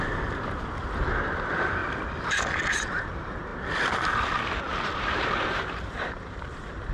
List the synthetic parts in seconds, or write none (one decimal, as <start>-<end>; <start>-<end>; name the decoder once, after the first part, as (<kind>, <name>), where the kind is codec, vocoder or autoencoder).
0.0-1.8 (vocoder, BigVGAN v2); 2.7-3.5; 4.6-6.9